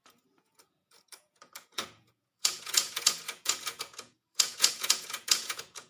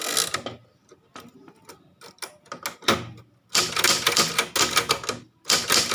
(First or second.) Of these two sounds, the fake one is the first